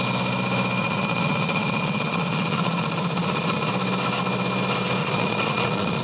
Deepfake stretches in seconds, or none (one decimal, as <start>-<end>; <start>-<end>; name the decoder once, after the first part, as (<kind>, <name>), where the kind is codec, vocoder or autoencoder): 0.8-3.7 (vocoder, Vocos); 5.0-6.0